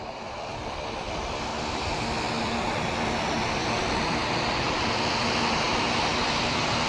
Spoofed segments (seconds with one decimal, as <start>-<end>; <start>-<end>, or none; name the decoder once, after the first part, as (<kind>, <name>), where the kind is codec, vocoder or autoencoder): none